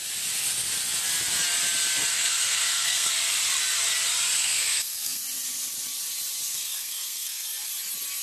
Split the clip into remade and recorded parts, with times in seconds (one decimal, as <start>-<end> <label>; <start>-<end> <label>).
0.0-2.1 recorded; 2.1-3.1 remade; 3.1-4.4 recorded; 4.4-5.2 remade; 5.2-6.5 recorded; 6.5-7.7 remade; 7.7-8.2 recorded